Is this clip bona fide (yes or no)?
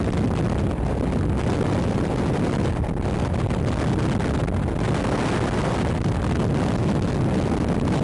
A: yes